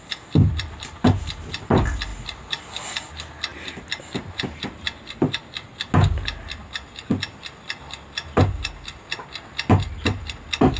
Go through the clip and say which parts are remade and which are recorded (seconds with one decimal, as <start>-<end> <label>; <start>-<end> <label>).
0.0-3.5 recorded; 3.5-5.4 remade; 5.4-10.8 recorded